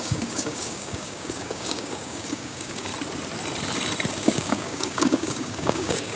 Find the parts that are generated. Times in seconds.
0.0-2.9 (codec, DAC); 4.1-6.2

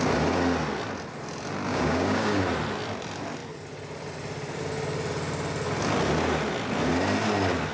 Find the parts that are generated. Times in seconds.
1.7-2.4 (codec, DAC)

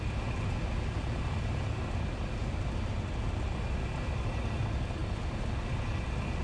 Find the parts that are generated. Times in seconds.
none